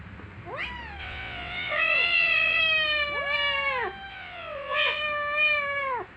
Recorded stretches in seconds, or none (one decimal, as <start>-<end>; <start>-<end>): 0.0-1.0; 2.6-4.1; 5.0-6.2